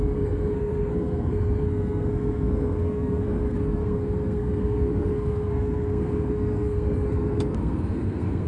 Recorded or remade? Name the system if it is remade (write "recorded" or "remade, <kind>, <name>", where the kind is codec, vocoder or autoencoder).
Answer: remade, codec, SNAC